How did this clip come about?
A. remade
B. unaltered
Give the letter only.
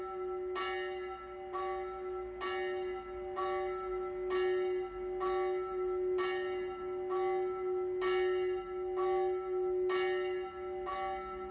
B